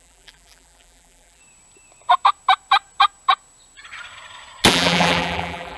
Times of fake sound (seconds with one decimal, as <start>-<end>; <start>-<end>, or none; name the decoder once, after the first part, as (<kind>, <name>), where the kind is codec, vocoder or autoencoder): 0.0-1.4 (vocoder, BigVGAN v2); 4.7-5.8

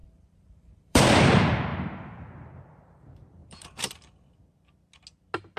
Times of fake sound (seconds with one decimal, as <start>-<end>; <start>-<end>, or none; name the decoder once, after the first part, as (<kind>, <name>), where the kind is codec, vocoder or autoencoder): 0.0-1.0 (vocoder, BigVGAN v2); 3.4-4.4